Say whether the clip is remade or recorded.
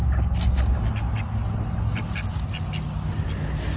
recorded